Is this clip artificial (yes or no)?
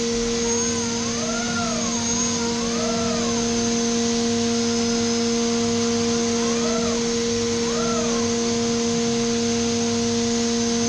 no